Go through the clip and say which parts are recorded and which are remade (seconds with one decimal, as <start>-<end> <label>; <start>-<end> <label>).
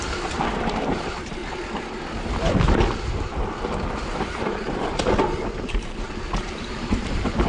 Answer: 0.0-1.4 remade; 1.4-4.2 recorded; 4.2-7.5 remade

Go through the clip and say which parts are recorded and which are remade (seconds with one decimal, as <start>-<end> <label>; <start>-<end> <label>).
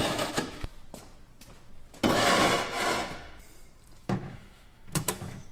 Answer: 0.0-0.7 remade; 0.7-4.0 recorded; 4.0-5.5 remade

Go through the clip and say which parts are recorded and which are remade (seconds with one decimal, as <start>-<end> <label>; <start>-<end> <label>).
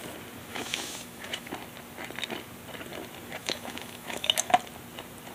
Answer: 0.0-0.5 recorded; 0.5-1.5 remade; 1.5-3.4 recorded; 3.4-4.5 remade; 4.5-5.3 recorded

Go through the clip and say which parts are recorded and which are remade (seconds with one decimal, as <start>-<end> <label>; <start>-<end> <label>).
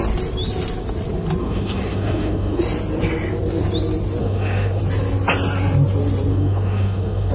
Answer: 0.0-1.4 recorded; 1.4-2.6 remade; 2.6-4.2 recorded; 4.2-4.8 remade; 4.8-6.3 recorded; 6.3-7.3 remade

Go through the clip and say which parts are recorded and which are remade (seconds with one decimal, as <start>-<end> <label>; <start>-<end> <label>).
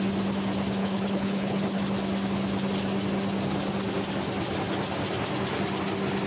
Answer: 0.0-0.8 recorded; 0.8-1.8 remade; 1.8-6.3 recorded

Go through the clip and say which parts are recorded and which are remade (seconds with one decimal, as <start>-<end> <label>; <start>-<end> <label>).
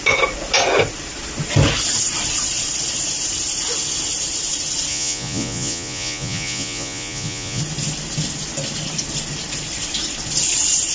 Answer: 0.0-4.9 recorded; 4.9-7.6 remade; 7.6-10.9 recorded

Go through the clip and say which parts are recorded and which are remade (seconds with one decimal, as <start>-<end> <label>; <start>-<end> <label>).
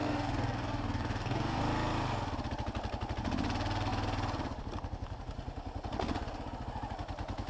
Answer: 0.0-1.6 remade; 1.6-7.5 recorded